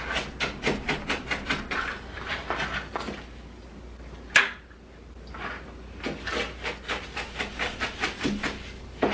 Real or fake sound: real